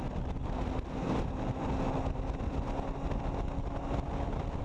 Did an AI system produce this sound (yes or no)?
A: no